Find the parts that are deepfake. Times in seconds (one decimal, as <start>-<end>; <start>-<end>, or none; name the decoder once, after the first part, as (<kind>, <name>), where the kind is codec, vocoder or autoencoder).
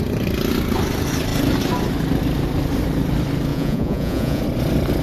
3.5-4.4 (vocoder, Vocos)